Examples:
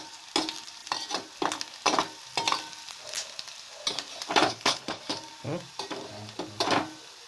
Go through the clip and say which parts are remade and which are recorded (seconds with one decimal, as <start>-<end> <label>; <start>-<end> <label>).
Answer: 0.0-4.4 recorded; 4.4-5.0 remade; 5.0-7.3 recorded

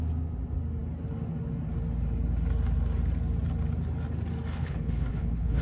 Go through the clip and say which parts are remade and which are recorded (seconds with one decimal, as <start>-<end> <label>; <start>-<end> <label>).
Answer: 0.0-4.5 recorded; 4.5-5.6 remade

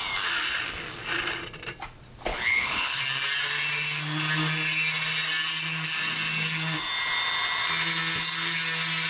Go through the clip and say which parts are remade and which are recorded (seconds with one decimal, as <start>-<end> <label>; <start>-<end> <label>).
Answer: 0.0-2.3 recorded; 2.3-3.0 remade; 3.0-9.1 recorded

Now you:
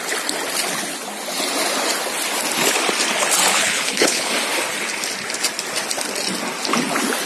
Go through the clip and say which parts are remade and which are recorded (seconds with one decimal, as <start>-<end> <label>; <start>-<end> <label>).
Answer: 0.0-3.5 recorded; 3.5-4.3 remade; 4.3-7.3 recorded